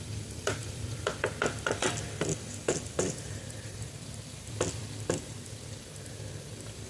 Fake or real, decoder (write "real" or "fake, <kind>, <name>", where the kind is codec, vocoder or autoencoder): fake, vocoder, BigVGAN v2